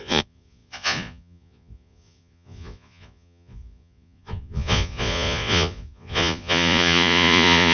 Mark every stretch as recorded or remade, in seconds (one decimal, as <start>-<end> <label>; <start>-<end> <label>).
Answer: 0.0-7.7 remade